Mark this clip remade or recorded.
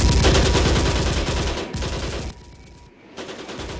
recorded